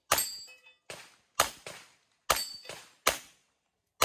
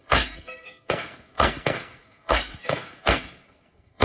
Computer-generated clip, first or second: second